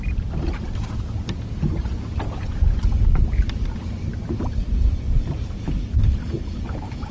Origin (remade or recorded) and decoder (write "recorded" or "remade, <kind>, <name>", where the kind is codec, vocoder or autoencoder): recorded